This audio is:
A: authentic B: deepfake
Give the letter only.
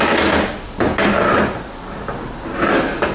A